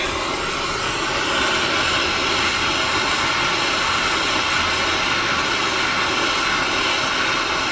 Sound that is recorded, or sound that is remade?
recorded